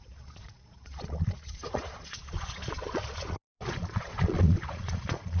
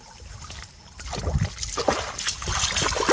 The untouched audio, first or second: second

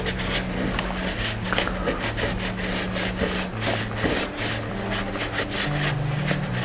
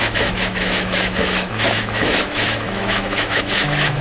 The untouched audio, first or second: first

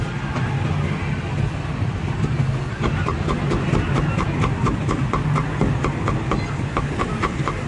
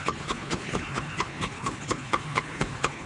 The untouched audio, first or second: first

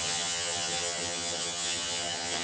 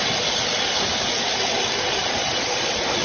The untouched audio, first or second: second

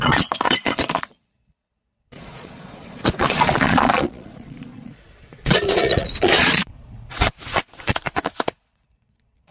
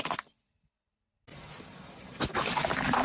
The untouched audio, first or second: second